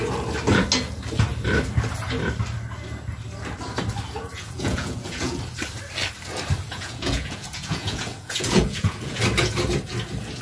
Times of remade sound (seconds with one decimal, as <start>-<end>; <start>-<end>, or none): 4.3-5.4; 6.7-9.2